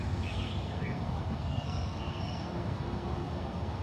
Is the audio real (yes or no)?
no